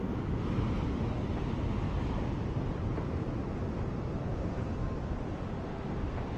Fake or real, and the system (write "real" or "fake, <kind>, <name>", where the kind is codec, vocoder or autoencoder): real